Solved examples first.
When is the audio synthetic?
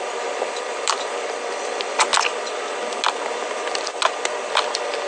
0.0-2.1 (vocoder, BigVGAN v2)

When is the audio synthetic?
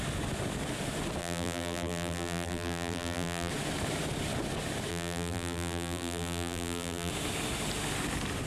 1.2-3.5 (vocoder, BigVGAN v2); 4.9-7.1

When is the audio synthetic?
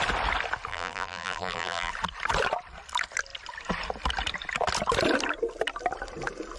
0.7-1.9 (vocoder, BigVGAN v2)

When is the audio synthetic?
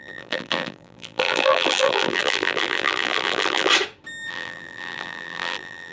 0.0-3.7 (vocoder, BigVGAN v2); 4.3-5.9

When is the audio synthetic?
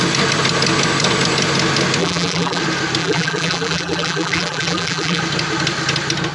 2.0-2.6 (vocoder, BigVGAN v2); 3.0-5.2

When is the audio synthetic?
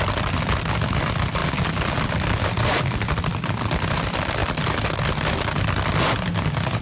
0.0-1.4 (vocoder, BigVGAN v2); 2.8-4.4